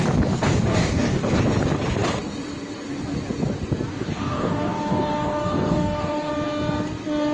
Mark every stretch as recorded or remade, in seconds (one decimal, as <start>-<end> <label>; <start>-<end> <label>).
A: 0.0-0.7 recorded; 0.7-1.4 remade; 1.4-3.9 recorded; 3.9-6.3 remade; 6.3-7.3 recorded